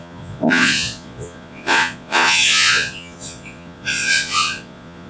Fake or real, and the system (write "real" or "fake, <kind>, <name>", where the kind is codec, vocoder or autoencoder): fake, vocoder, Vocos